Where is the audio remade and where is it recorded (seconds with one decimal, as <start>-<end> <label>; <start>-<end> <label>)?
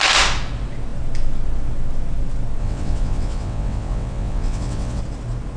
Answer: 0.0-2.6 recorded; 2.6-5.0 remade; 5.0-5.6 recorded